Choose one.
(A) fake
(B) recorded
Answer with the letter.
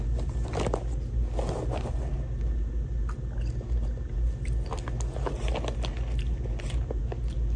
B